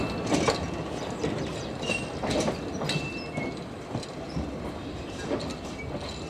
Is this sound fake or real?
real